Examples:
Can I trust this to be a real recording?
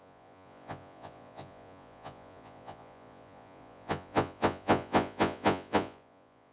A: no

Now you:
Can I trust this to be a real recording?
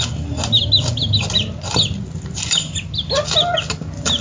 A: yes